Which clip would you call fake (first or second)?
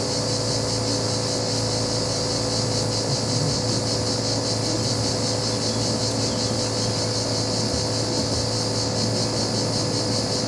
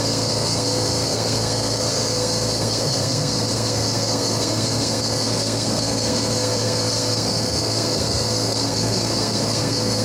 second